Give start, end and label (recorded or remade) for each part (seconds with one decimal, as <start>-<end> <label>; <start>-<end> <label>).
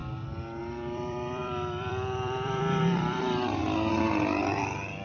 0.0-0.6 recorded; 0.6-3.6 remade; 3.6-4.6 recorded; 4.6-5.0 remade